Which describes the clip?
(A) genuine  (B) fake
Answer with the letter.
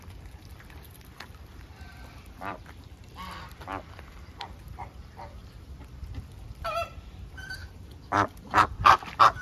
B